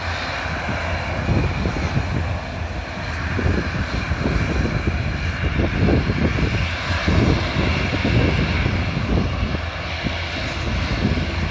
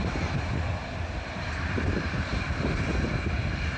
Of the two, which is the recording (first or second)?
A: first